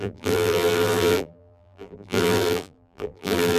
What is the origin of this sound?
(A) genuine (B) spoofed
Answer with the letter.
B